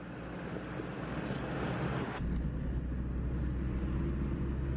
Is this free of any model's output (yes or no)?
yes